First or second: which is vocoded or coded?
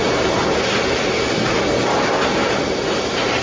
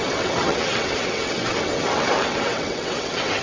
second